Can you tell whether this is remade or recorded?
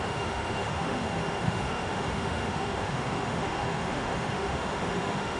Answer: remade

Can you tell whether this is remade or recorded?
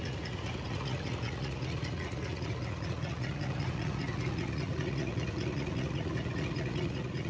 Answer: remade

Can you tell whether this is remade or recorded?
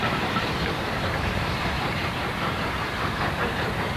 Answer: remade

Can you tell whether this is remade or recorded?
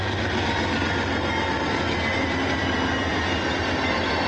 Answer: recorded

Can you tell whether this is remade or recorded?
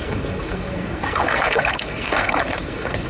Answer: remade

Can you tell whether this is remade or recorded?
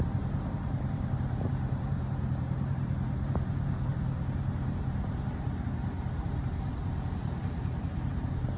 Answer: remade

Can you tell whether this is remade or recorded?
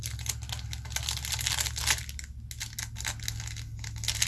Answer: recorded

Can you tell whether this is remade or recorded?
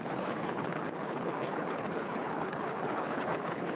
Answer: remade